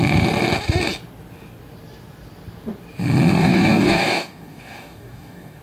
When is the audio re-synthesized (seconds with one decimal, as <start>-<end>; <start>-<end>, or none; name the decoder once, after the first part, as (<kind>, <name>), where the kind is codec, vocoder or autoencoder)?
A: 3.3-5.6 (codec, DAC)